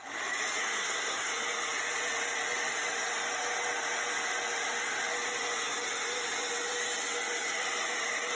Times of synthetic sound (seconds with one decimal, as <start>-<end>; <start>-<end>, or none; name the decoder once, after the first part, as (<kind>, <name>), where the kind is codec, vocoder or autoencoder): 0.6-1.3 (codec, SNAC)